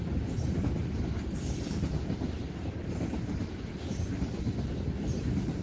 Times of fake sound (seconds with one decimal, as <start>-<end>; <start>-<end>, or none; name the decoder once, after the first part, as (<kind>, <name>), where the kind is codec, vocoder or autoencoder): 0.8-1.6 (vocoder, BigVGAN v2); 3.7-4.4